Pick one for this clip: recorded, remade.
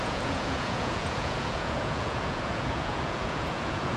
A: remade